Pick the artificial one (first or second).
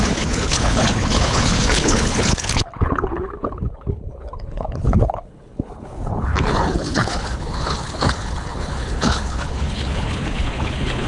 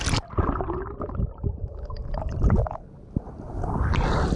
first